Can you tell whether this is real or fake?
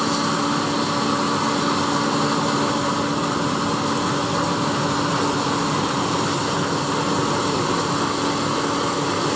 real